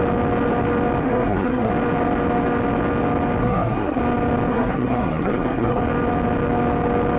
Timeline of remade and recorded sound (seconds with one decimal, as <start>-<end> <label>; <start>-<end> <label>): 0.0-1.0 recorded; 1.0-1.7 remade; 1.7-3.4 recorded; 3.4-4.0 remade; 4.0-4.5 recorded; 4.5-5.8 remade; 5.8-7.2 recorded